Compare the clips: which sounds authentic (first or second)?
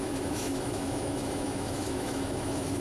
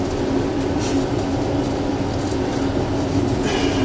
second